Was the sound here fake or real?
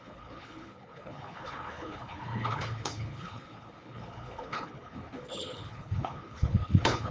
fake